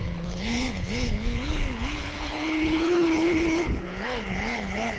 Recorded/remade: remade